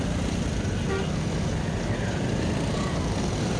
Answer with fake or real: real